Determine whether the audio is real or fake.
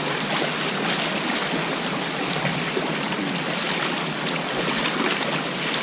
real